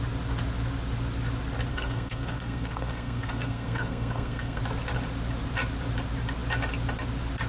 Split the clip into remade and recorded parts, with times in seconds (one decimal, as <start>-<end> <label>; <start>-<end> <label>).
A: 0.0-1.7 recorded; 1.7-4.6 remade; 4.6-7.5 recorded